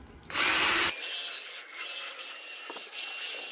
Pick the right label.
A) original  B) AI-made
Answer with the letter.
A